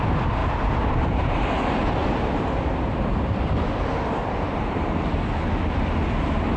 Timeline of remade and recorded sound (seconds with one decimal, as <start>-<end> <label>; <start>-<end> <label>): 0.0-0.4 recorded; 0.4-1.4 remade; 1.4-4.2 recorded; 4.2-4.9 remade; 4.9-6.6 recorded